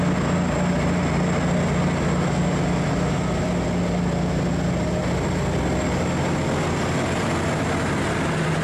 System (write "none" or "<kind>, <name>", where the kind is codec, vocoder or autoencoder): none